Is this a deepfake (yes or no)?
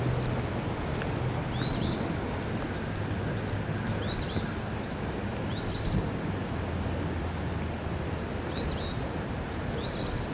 no